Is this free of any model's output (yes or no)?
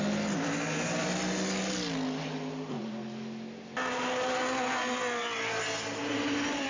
yes